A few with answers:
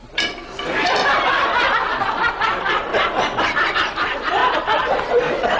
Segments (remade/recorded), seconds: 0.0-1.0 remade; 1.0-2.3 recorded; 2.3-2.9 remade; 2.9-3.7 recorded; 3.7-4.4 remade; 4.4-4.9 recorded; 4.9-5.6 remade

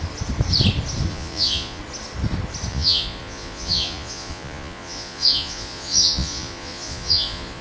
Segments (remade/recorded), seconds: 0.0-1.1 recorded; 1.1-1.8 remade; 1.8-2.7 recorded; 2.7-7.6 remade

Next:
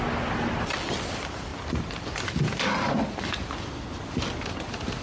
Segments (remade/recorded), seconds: 0.0-5.0 recorded

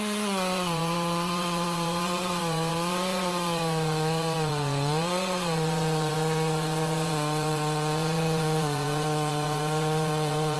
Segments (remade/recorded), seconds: 0.0-10.6 remade